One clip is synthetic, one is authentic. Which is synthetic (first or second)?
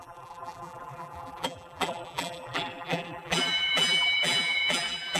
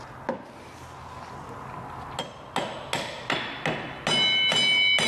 first